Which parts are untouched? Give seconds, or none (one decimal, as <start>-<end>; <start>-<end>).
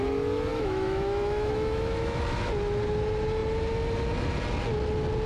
0.0-0.5; 2.2-5.3